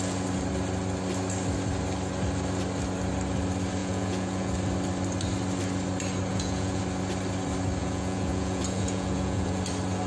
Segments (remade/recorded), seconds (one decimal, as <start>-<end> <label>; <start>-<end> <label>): 0.0-3.8 recorded; 3.8-4.5 remade; 4.5-6.3 recorded; 6.3-6.8 remade; 6.8-7.8 recorded; 7.8-9.6 remade; 9.6-10.1 recorded